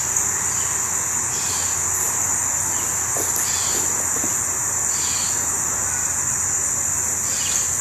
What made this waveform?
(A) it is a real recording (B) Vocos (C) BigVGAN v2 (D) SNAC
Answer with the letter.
A